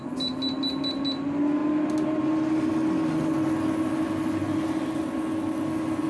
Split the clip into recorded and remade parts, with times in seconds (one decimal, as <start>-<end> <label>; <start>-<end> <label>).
0.0-6.1 recorded